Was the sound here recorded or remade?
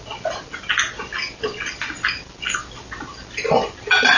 recorded